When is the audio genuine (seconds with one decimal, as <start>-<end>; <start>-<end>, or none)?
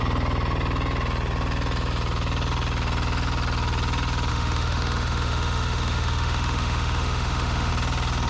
0.0-4.3; 7.7-8.3